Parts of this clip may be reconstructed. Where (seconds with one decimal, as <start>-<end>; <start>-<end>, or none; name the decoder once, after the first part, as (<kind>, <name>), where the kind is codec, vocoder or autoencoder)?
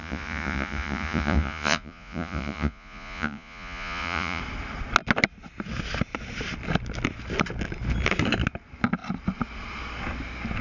0.0-4.4 (vocoder, Vocos)